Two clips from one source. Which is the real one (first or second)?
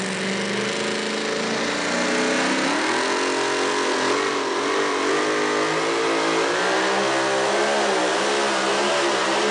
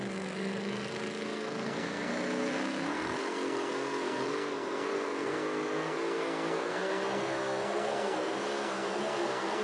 first